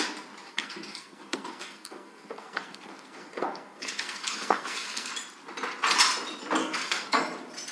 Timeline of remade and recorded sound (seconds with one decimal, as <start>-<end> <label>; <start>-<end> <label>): 0.0-0.5 recorded; 0.5-5.1 remade; 5.1-6.6 recorded; 6.6-7.2 remade; 7.2-7.7 recorded